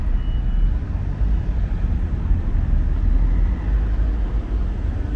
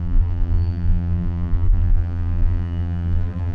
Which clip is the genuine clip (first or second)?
first